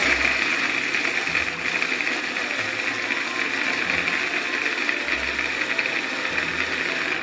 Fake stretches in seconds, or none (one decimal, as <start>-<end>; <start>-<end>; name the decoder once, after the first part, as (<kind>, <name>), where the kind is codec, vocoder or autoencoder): 0.0-0.7 (vocoder, BigVGAN v2)